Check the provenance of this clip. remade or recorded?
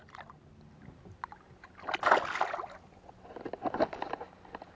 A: recorded